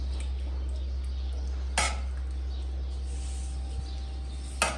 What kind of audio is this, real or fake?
real